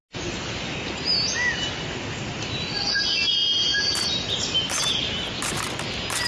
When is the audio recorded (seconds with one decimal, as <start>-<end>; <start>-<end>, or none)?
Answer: 0.0-6.3